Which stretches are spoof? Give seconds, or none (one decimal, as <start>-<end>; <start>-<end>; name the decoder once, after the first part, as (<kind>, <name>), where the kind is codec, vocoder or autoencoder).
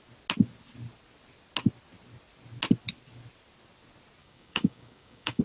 4.2-5.4 (codec, DAC)